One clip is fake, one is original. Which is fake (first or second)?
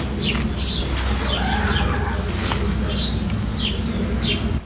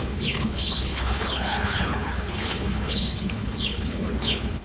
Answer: second